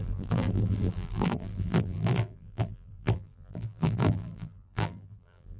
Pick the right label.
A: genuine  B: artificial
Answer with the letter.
B